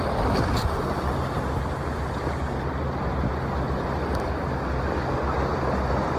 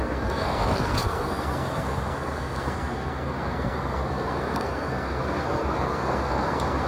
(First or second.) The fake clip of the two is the second